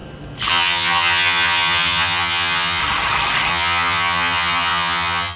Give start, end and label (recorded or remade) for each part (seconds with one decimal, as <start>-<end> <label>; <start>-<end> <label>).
0.0-0.5 recorded; 0.5-2.8 remade; 2.8-3.5 recorded; 3.5-5.4 remade